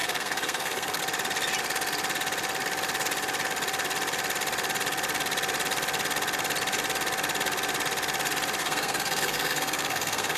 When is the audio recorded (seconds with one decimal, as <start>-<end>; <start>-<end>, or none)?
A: 1.0-8.6